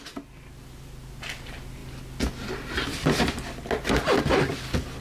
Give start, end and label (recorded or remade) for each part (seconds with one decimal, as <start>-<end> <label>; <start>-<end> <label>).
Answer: 0.0-5.0 recorded